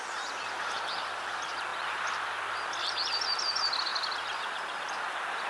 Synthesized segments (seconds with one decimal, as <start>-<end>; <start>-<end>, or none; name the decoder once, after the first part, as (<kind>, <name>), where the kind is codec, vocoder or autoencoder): none